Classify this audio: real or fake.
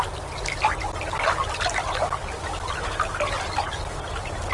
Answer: real